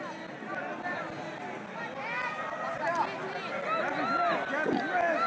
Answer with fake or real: real